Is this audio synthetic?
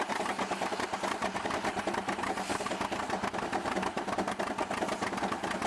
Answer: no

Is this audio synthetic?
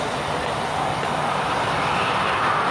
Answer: no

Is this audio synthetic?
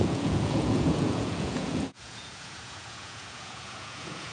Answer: yes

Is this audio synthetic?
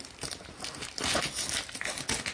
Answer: no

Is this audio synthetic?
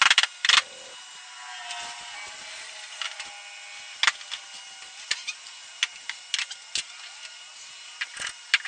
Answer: no